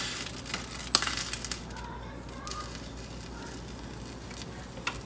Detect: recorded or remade recorded